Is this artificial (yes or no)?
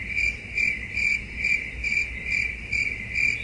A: no